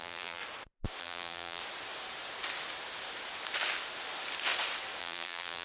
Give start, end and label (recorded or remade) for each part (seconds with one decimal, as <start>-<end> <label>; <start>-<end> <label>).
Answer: 0.0-0.4 remade; 0.4-1.0 recorded; 1.0-1.6 remade; 1.6-5.0 recorded; 5.0-5.6 remade